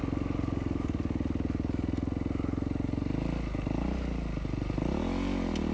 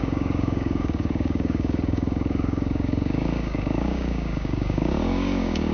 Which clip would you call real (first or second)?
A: first